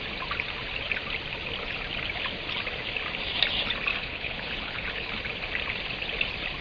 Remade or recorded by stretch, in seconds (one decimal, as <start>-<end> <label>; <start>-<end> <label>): 0.0-3.9 recorded; 3.9-5.1 remade; 5.1-6.6 recorded